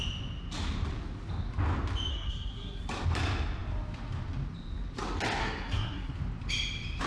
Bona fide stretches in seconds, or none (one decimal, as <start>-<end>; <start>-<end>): 0.0-2.1; 2.8-5.4; 6.1-7.1